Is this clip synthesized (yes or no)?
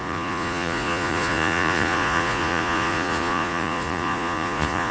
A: yes